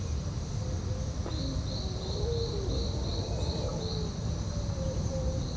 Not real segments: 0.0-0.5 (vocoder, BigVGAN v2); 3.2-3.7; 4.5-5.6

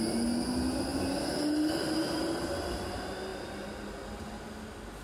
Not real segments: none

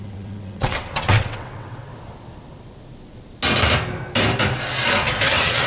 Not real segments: 0.0-1.9 (vocoder, WaveNeXt); 5.3-5.7